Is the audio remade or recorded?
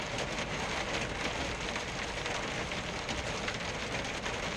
recorded